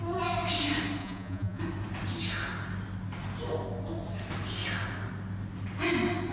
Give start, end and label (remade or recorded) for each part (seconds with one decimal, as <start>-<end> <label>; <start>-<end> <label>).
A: 0.0-1.0 recorded; 1.0-1.6 remade; 1.6-6.3 recorded